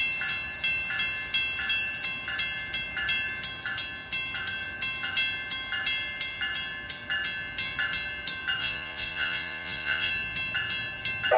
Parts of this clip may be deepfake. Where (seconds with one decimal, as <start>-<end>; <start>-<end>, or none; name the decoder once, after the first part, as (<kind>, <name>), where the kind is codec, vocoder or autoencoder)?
8.6-10.1 (vocoder, Vocos)